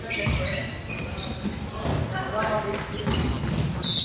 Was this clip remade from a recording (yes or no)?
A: no